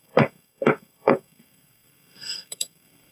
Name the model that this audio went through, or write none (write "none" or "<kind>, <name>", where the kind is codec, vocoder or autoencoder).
codec, SNAC